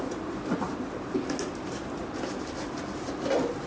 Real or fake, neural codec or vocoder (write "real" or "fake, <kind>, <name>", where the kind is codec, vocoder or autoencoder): real